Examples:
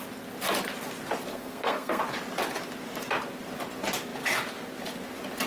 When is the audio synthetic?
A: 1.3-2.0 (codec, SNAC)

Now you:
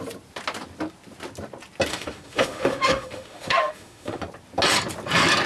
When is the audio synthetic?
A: 1.9-4.2 (autoencoder, DAC-VAE)

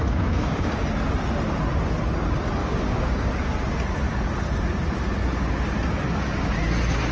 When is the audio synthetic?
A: 0.0-0.8 (codec, DAC); 2.6-3.4

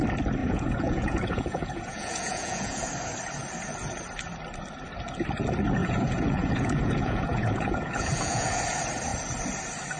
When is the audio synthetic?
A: 0.4-2.9 (vocoder, Vocos); 5.8-8.6

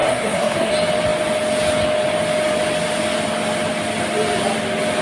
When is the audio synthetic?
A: 0.0-0.7 (codec, SNAC)